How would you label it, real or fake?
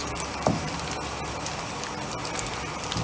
real